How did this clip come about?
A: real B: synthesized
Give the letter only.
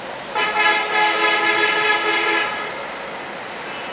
A